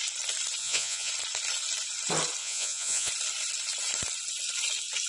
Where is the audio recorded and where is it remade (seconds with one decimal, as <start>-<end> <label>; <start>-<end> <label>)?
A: 0.0-0.6 recorded; 0.6-1.1 remade; 1.1-2.4 recorded; 2.4-3.1 remade; 3.1-5.1 recorded